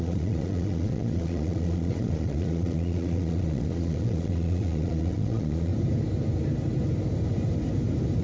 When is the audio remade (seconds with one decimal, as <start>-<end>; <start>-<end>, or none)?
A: 0.0-5.7

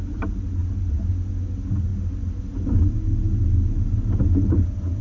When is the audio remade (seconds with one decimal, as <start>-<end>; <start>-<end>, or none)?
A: none